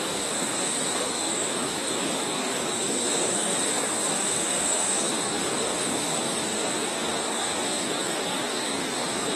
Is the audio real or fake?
fake